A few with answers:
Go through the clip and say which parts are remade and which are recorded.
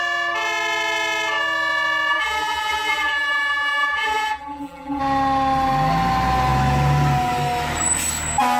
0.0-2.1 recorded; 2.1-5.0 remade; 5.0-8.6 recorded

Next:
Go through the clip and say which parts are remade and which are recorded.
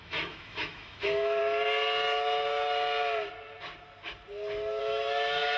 0.0-1.4 remade; 1.4-4.8 recorded; 4.8-5.6 remade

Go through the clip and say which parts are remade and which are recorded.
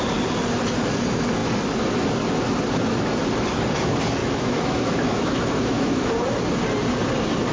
0.0-4.2 recorded; 4.2-6.1 remade; 6.1-7.5 recorded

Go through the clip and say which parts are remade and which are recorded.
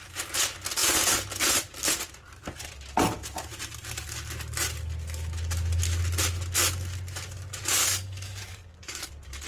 0.0-7.8 recorded; 7.8-9.1 remade; 9.1-9.5 recorded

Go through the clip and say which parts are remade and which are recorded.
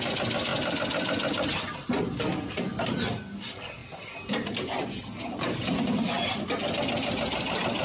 0.0-7.8 recorded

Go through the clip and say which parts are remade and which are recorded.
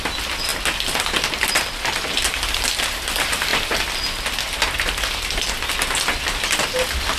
0.0-7.2 recorded